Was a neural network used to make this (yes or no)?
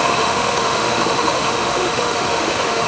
yes